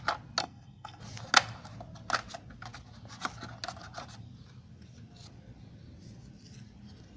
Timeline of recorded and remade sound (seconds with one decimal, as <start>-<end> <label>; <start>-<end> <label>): 0.0-0.4 recorded; 0.4-1.0 remade; 1.0-7.2 recorded